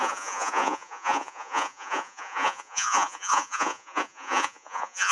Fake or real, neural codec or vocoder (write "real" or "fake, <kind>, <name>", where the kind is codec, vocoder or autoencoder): fake, vocoder, Vocos